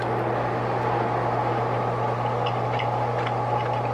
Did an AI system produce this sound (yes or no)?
no